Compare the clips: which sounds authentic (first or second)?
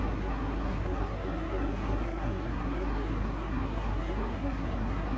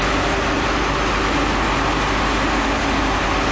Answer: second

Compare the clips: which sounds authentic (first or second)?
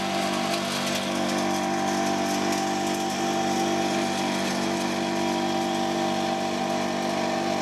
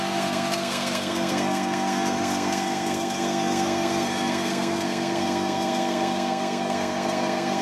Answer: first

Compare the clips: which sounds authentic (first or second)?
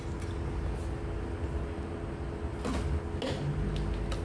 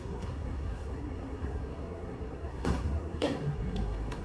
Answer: first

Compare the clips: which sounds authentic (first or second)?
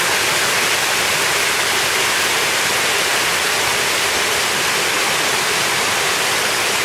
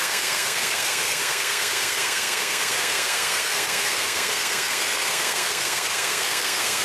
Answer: first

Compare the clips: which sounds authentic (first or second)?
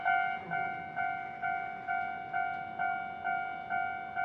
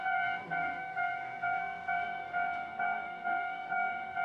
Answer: first